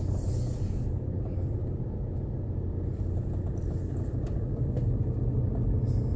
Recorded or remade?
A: recorded